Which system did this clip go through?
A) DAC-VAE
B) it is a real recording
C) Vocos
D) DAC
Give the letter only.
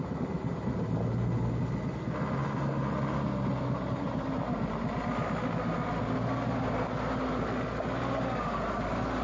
B